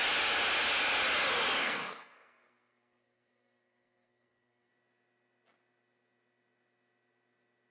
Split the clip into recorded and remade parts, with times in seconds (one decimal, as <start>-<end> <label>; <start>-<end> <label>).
0.0-1.6 recorded; 1.6-4.7 remade; 4.7-7.7 recorded

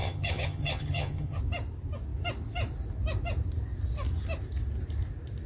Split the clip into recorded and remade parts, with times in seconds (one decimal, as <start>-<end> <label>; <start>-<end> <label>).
0.0-1.4 remade; 1.4-5.5 recorded

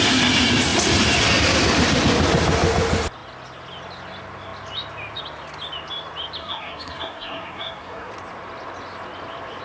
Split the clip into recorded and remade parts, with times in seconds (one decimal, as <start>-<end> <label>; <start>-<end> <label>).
0.0-6.4 recorded; 6.4-8.1 remade; 8.1-9.6 recorded

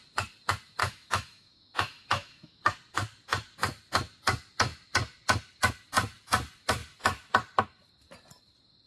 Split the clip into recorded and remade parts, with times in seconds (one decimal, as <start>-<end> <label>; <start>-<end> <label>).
0.0-0.8 recorded; 0.8-2.6 remade; 2.6-8.9 recorded

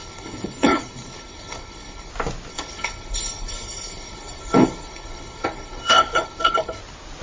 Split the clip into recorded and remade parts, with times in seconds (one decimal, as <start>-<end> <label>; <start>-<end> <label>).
0.0-2.1 remade; 2.1-2.5 recorded; 2.5-6.8 remade; 6.8-7.2 recorded

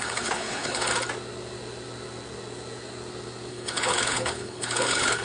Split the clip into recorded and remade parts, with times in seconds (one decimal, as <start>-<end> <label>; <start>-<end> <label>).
0.0-0.9 remade; 0.9-3.5 recorded; 3.5-5.2 remade

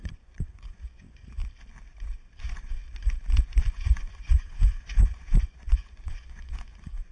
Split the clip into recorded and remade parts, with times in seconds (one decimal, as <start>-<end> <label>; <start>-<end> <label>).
0.0-1.4 remade; 1.4-2.4 recorded; 2.4-2.8 remade; 2.8-3.7 recorded; 3.7-7.1 remade

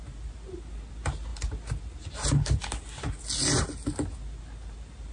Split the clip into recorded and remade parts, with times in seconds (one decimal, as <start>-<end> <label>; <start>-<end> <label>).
0.0-5.1 recorded